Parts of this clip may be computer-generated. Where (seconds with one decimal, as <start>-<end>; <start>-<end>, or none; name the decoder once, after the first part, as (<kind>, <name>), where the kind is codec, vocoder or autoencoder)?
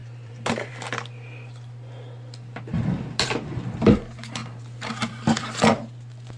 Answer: 0.0-0.7 (vocoder, BigVGAN v2); 4.4-4.9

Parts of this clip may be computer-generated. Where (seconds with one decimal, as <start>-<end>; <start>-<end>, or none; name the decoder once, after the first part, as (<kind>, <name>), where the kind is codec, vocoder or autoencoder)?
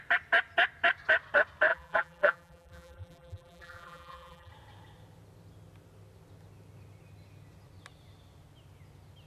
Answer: 1.7-4.5 (vocoder, BigVGAN v2)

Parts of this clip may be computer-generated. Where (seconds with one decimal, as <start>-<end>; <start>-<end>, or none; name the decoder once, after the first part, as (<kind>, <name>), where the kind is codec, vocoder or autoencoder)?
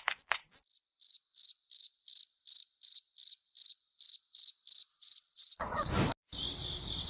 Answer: 4.9-5.9 (vocoder, Vocos)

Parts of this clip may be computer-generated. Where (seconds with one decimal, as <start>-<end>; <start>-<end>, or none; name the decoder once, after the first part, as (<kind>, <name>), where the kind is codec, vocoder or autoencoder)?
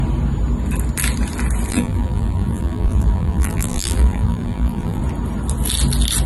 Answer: 1.7-5.0 (vocoder, BigVGAN v2)